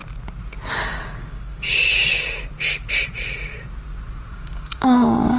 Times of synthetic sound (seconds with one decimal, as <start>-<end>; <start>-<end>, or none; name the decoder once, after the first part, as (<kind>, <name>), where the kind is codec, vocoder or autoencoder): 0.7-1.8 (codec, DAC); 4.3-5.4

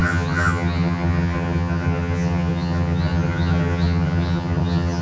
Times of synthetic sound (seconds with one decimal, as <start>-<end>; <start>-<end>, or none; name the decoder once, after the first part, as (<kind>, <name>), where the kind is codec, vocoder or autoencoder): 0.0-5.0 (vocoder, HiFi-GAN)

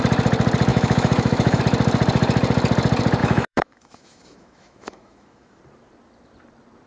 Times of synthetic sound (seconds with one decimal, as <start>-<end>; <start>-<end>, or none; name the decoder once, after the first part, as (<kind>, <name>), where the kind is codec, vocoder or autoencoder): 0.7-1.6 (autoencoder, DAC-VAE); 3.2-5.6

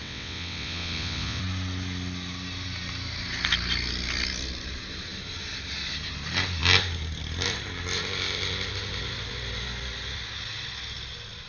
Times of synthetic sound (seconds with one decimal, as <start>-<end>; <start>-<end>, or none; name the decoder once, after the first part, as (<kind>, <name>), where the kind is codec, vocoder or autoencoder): 0.0-1.4 (vocoder, WaveNeXt)

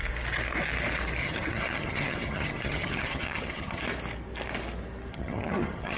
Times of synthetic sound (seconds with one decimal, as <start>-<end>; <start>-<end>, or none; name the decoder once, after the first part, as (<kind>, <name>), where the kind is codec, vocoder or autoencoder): 1.2-3.8 (vocoder, HiFi-GAN); 5.1-6.0

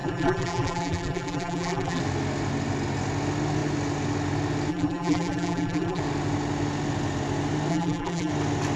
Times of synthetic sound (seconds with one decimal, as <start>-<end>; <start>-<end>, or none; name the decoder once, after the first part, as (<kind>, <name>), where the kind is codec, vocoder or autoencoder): 0.0-2.0 (vocoder, BigVGAN v2); 4.7-6.0; 7.7-8.3

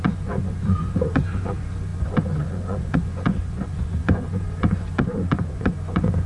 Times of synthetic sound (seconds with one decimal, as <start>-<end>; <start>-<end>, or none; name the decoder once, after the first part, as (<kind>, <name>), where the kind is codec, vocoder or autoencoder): 0.0-6.3 (vocoder, Vocos)